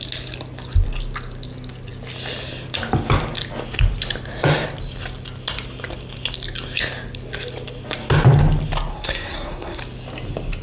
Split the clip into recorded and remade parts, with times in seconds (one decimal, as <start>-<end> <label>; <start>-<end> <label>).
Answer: 0.0-8.9 recorded; 8.9-9.8 remade; 9.8-10.6 recorded